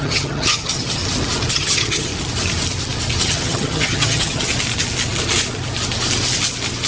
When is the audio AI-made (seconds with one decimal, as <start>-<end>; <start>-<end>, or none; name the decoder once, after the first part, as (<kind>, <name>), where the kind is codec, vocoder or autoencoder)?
0.0-1.0 (vocoder, HiFi-GAN); 1.5-2.1; 3.2-4.5